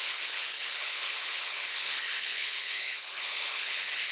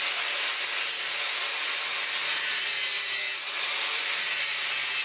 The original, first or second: second